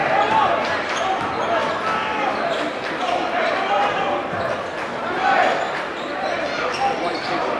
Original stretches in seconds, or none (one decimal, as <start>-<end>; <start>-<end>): 0.0-7.6